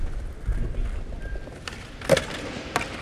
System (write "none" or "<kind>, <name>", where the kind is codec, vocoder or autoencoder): none